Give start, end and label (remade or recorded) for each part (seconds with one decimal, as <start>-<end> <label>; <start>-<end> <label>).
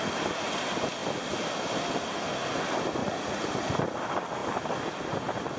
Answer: 0.0-3.0 recorded; 3.0-3.5 remade; 3.5-5.6 recorded